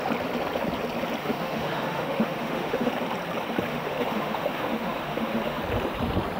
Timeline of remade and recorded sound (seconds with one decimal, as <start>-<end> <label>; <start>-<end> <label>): 0.0-1.2 recorded; 1.2-2.9 remade; 2.9-3.7 recorded; 3.7-5.6 remade; 5.6-6.4 recorded